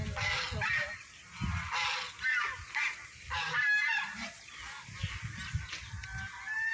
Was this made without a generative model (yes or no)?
yes